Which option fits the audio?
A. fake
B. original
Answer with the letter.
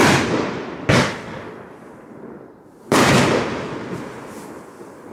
B